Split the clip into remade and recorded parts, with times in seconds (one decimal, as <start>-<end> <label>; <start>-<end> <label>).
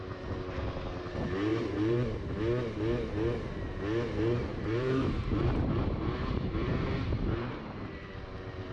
0.0-1.5 recorded; 1.5-2.4 remade; 2.4-4.5 recorded; 4.5-7.5 remade; 7.5-8.7 recorded